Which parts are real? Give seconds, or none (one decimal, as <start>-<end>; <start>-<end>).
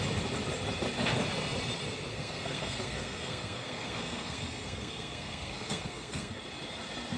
0.0-2.1; 6.4-7.2